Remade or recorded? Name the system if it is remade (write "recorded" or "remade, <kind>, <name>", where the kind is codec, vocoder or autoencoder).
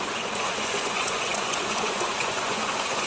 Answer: remade, vocoder, Vocos